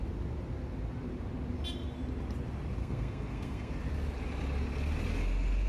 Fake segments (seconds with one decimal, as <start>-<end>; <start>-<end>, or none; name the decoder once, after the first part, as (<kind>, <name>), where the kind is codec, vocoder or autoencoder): 2.8-3.7 (codec, SNAC)

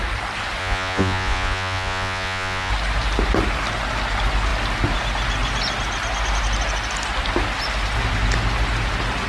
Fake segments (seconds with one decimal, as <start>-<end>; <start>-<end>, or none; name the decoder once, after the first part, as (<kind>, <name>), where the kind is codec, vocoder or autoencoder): 0.6-2.7 (vocoder, Vocos)

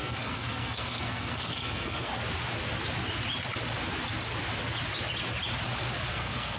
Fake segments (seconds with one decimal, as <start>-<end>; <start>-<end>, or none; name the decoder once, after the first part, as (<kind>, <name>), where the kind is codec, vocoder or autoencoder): 0.0-2.1 (codec, SNAC); 6.1-6.6

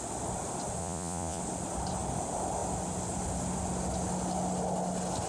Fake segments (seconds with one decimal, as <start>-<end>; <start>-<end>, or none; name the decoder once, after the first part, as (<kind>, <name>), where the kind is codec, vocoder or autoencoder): 0.8-1.4 (vocoder, Vocos)

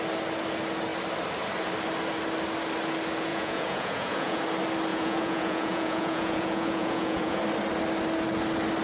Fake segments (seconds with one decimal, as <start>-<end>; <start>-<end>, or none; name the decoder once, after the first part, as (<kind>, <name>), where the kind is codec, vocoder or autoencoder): 3.3-4.4 (vocoder, Vocos); 4.9-7.4